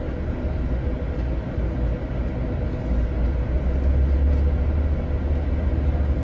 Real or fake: real